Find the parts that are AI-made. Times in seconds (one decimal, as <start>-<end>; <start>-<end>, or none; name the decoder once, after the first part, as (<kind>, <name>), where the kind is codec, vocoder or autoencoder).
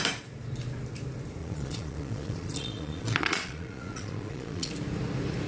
1.4-4.7 (vocoder, Vocos)